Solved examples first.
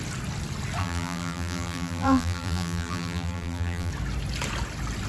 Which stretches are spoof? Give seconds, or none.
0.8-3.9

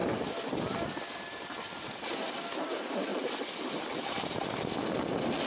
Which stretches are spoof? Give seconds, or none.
0.0-2.3; 3.1-3.7

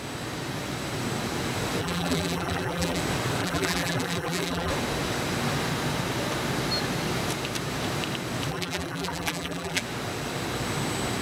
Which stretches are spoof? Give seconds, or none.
1.8-3.0; 3.4-4.7; 8.5-9.8

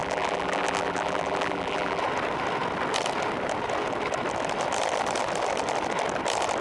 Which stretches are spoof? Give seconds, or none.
0.0-2.0

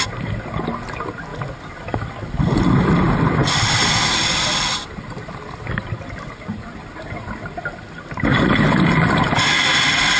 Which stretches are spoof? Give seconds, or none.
none

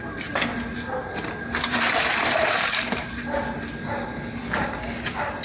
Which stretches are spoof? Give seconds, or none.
0.5-3.7

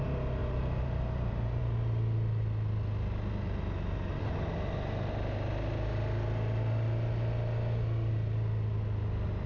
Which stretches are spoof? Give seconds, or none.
0.4-1.6

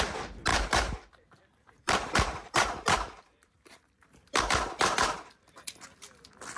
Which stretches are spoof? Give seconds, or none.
0.5-4.4